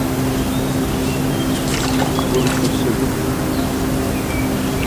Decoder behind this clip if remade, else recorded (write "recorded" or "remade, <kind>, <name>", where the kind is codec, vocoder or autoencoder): recorded